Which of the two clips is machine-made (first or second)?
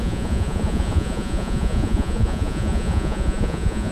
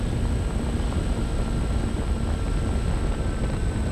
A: first